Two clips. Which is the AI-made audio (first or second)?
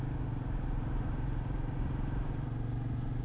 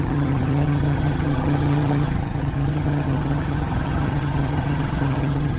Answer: second